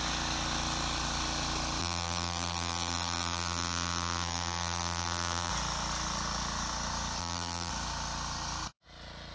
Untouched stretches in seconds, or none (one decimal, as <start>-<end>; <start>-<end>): 0.0-1.8; 5.5-7.2; 7.7-9.3

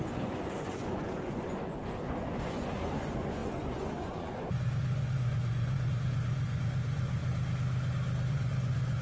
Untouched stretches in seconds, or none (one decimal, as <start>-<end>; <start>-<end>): 7.2-8.3

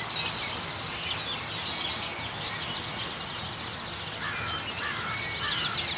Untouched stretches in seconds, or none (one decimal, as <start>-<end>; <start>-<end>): 0.0-6.0